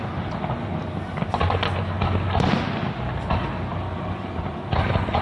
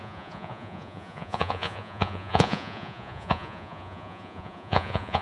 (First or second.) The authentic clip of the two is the first